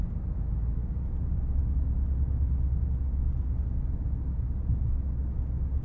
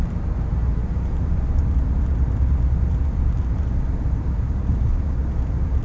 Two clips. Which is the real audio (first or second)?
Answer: first